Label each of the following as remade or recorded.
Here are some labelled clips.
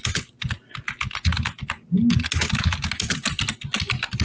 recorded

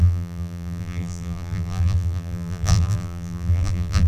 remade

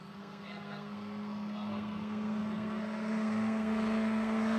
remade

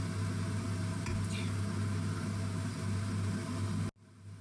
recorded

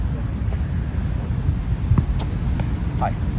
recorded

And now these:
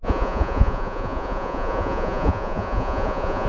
remade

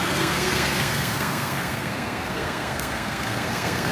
remade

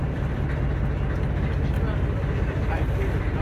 remade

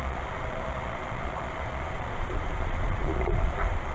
remade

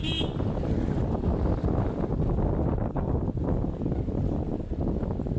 recorded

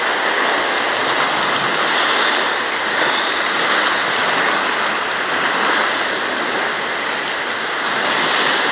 recorded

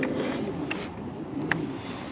recorded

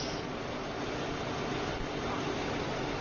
recorded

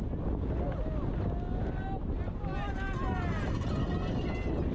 recorded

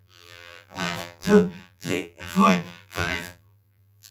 remade